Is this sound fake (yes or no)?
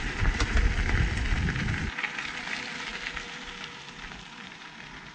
no